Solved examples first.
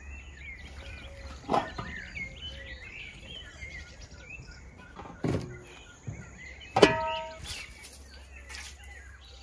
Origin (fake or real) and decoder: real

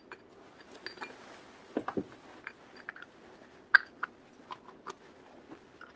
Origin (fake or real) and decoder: real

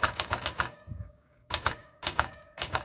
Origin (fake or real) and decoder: fake, codec, DAC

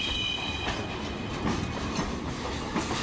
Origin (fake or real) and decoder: fake, vocoder, BigVGAN v2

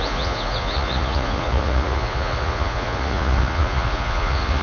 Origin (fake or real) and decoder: fake, vocoder, Vocos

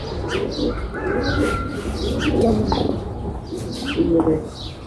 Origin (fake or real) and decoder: real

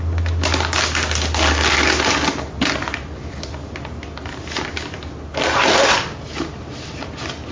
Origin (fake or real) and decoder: real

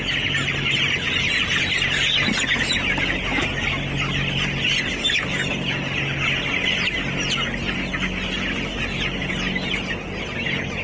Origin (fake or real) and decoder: real